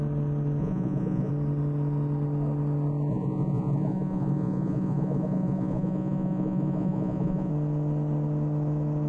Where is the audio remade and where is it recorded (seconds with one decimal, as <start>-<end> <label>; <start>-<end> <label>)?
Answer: 0.0-0.6 recorded; 0.6-1.3 remade; 1.3-3.1 recorded; 3.1-7.5 remade; 7.5-9.1 recorded